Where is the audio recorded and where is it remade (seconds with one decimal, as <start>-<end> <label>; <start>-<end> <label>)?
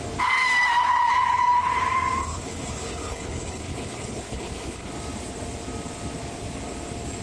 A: 0.0-2.2 recorded; 2.2-4.9 remade; 4.9-7.2 recorded